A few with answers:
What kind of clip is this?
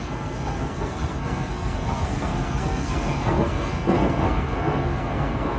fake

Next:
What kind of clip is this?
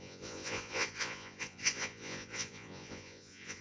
fake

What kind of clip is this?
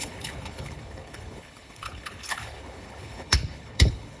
fake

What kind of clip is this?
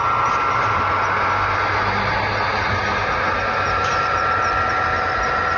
real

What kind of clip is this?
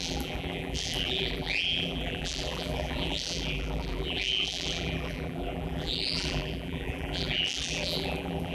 fake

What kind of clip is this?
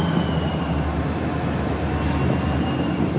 real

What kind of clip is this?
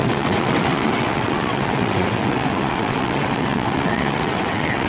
fake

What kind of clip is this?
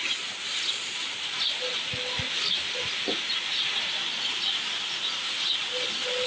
real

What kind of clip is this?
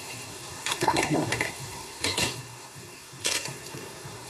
fake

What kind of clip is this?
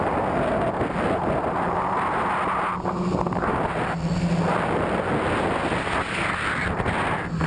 real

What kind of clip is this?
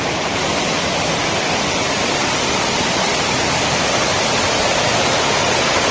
fake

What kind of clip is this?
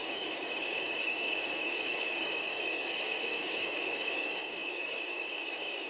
fake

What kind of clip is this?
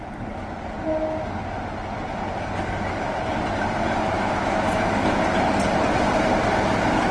real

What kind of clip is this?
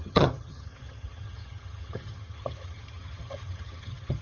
fake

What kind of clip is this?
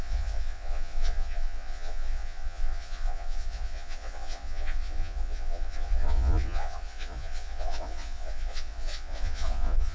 fake